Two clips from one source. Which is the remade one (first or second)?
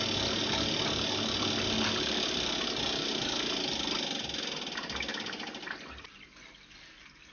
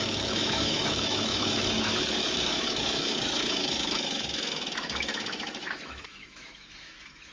second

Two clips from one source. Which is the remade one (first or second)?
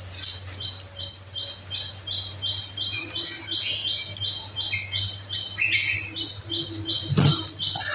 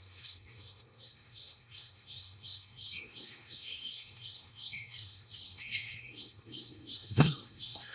second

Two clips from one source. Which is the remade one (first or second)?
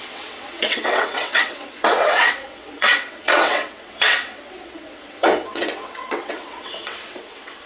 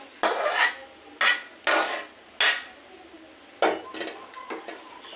first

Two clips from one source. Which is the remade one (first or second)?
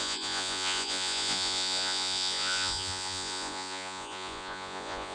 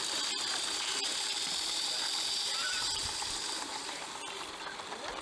first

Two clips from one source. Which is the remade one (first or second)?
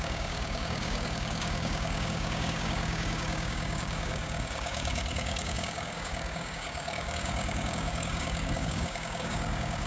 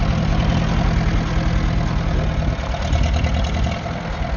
first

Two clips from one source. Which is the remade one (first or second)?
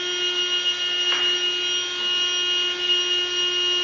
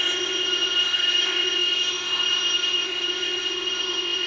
second